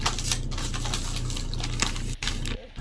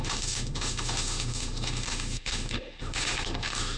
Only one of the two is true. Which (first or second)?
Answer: first